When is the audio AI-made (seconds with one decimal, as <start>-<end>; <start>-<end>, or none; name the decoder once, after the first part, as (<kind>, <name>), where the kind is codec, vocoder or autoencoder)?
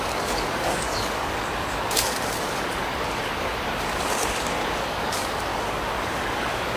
0.0-6.8 (codec, DAC)